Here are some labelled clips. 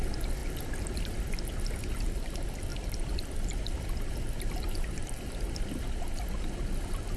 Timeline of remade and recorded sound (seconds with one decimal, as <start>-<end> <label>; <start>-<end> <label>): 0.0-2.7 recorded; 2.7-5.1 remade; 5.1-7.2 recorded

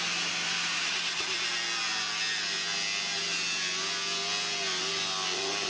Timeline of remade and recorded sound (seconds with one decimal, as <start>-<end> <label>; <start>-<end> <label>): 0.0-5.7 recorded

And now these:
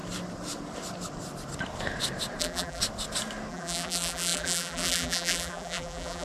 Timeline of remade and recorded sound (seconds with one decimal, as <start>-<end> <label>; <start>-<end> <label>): 0.0-2.4 recorded; 2.4-2.8 remade; 2.8-3.5 recorded; 3.5-6.2 remade

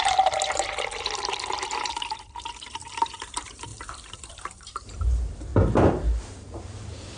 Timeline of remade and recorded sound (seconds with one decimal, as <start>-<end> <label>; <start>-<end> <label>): 0.0-3.7 remade; 3.7-4.3 recorded; 4.3-5.5 remade; 5.5-6.3 recorded; 6.3-7.2 remade

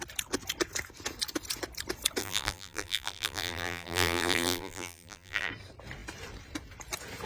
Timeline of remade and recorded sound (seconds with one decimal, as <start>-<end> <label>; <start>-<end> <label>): 0.0-2.2 recorded; 2.2-5.5 remade; 5.5-7.3 recorded

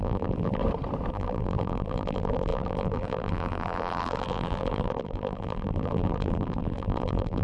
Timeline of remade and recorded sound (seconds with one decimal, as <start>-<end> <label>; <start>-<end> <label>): 0.0-0.6 remade; 0.6-1.1 recorded; 1.1-7.4 remade

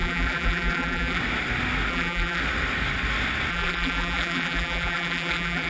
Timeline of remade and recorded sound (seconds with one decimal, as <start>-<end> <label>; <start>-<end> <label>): 0.0-1.2 remade; 1.2-1.9 recorded; 1.9-2.4 remade; 2.4-3.5 recorded; 3.5-5.7 remade